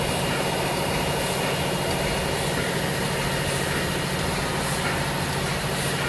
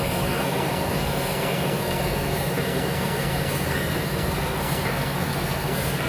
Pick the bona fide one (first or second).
first